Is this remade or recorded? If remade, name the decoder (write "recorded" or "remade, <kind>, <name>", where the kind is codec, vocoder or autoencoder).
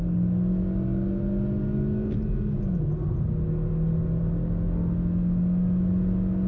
recorded